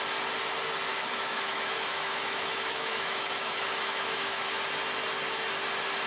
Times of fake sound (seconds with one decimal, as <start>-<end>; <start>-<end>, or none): 0.9-4.6